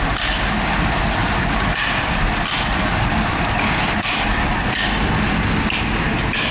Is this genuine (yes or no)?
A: yes